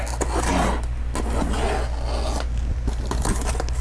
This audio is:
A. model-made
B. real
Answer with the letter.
B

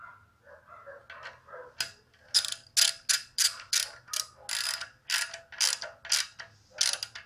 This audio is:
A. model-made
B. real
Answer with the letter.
B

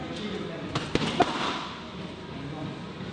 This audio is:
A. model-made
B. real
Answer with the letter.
B